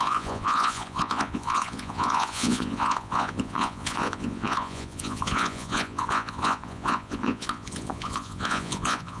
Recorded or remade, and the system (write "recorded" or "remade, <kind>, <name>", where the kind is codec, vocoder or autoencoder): remade, vocoder, Vocos